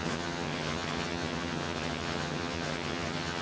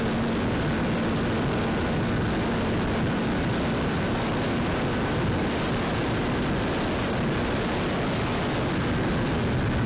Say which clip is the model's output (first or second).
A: first